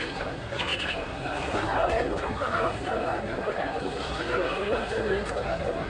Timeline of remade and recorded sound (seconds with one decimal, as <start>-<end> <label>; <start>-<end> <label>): 0.0-5.9 remade